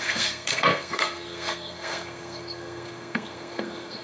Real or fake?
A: fake